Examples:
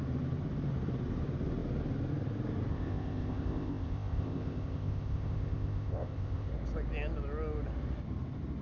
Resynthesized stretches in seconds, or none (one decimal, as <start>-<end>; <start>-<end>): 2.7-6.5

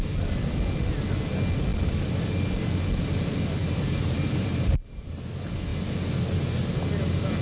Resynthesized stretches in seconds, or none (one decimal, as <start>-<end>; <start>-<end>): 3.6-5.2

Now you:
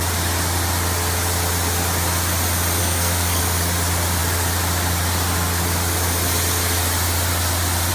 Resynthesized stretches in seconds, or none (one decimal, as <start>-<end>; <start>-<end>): 2.8-3.4

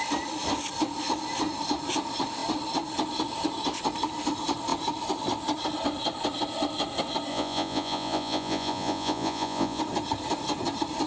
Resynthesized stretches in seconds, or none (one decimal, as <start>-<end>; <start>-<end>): 7.3-9.8

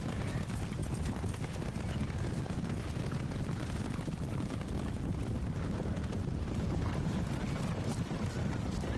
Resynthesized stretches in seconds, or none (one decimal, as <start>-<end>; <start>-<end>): none

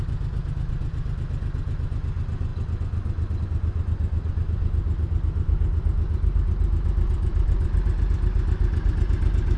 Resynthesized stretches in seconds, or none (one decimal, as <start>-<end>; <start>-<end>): none

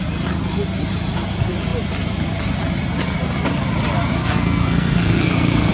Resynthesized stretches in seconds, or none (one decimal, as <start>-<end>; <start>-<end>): 4.2-5.7

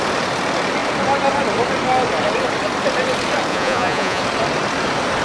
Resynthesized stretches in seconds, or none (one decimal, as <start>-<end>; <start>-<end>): 3.5-4.2